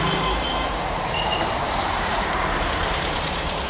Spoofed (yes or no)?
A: yes